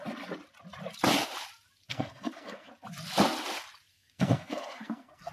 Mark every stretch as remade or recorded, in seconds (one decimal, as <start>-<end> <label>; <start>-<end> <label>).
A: 0.0-1.9 recorded; 1.9-2.7 remade; 2.7-3.9 recorded; 3.9-5.3 remade